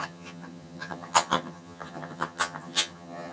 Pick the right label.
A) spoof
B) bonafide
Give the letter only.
A